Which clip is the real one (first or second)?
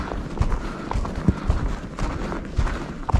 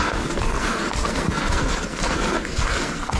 first